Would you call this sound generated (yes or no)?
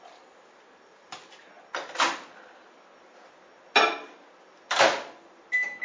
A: no